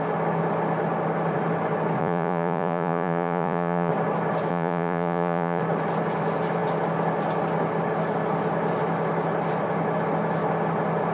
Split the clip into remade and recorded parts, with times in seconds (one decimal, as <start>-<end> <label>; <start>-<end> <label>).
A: 0.0-2.0 recorded; 2.0-3.9 remade; 3.9-4.5 recorded; 4.5-5.6 remade; 5.6-11.1 recorded